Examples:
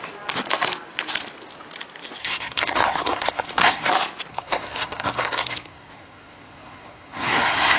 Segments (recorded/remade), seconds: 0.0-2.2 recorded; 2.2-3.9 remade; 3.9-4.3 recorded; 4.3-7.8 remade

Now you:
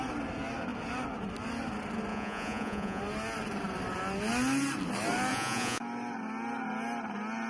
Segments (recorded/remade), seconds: 0.0-2.1 recorded; 2.1-3.0 remade; 3.0-5.3 recorded; 5.3-5.8 remade; 5.8-7.5 recorded

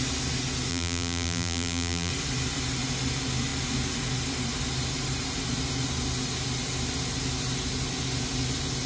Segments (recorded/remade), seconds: 0.0-0.7 recorded; 0.7-2.1 remade; 2.1-8.9 recorded

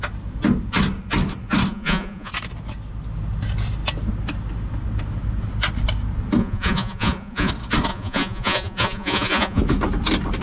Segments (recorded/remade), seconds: 0.0-1.7 recorded; 1.7-2.3 remade; 2.3-6.4 recorded; 6.4-7.5 remade; 7.5-7.9 recorded; 7.9-9.6 remade; 9.6-10.4 recorded

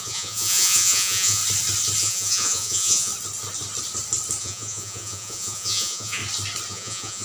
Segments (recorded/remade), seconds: 0.0-1.4 remade; 1.4-2.0 recorded; 2.0-3.1 remade; 3.1-4.4 recorded; 4.4-6.2 remade; 6.2-6.7 recorded; 6.7-7.2 remade

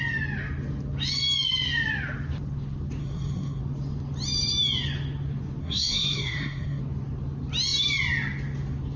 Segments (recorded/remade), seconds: 0.0-3.0 recorded; 3.0-3.6 remade; 3.6-5.6 recorded; 5.6-6.8 remade; 6.8-9.0 recorded